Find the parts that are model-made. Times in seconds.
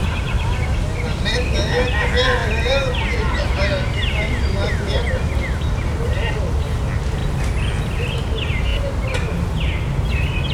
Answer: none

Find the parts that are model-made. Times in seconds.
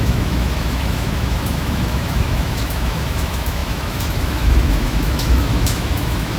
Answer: 0.0-6.4 (autoencoder, DAC-VAE)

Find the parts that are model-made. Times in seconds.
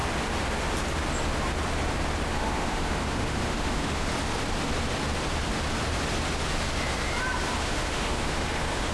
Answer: 2.3-4.1 (autoencoder, DAC-VAE); 7.6-8.9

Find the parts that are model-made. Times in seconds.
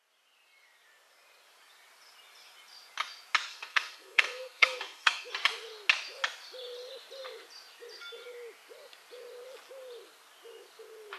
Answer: 3.5-5.3 (codec, SNAC)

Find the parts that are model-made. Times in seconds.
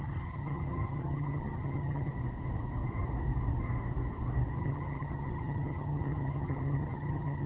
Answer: 0.0-2.1 (vocoder, HiFi-GAN); 4.6-7.5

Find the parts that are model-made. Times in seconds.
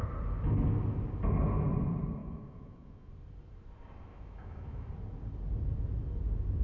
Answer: 2.2-3.1 (autoencoder, DAC-VAE); 4.1-4.9